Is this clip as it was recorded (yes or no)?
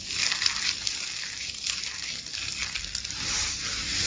yes